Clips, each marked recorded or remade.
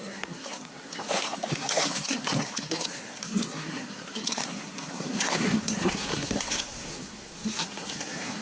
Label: remade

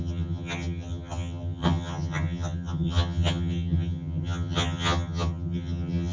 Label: remade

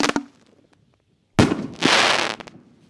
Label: recorded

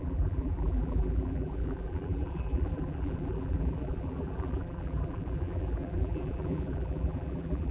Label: remade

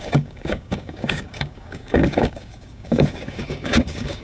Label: remade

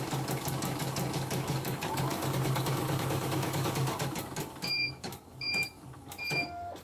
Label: remade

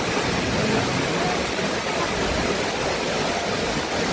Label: recorded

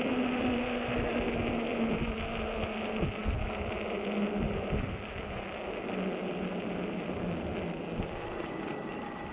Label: recorded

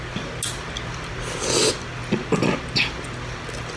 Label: recorded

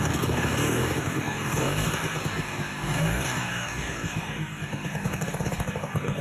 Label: remade